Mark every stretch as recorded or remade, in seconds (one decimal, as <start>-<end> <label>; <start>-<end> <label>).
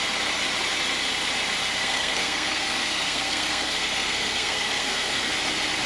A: 0.0-1.8 recorded; 1.8-5.3 remade; 5.3-5.9 recorded